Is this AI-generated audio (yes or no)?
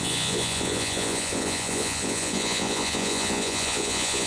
yes